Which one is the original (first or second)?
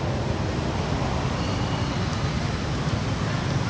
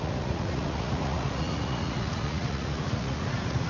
first